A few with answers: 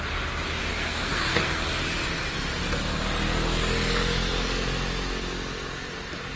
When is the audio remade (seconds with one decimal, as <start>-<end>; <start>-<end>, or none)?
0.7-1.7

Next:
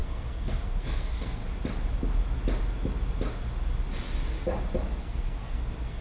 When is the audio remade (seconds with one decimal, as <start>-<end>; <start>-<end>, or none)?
0.0-1.4; 5.0-6.0

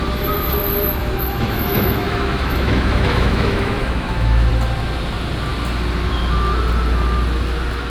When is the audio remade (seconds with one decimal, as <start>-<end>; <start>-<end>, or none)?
1.0-4.5

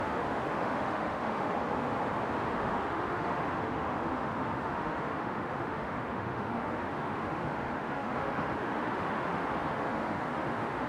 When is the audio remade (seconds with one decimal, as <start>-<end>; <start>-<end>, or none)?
0.0-1.9; 2.5-10.9

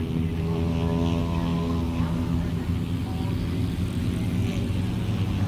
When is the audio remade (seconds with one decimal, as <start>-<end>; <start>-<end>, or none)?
none